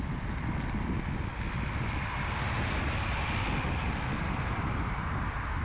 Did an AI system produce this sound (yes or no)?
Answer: no